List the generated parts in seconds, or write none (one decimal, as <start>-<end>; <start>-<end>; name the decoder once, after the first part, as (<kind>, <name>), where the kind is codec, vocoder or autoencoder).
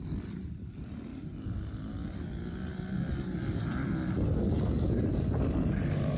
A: none